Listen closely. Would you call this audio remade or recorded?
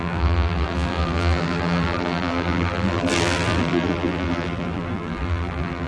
remade